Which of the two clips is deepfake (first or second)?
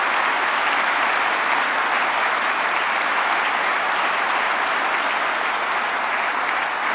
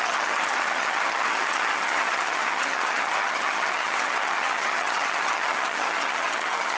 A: second